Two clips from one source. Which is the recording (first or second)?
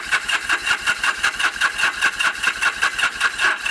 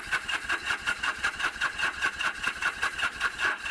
first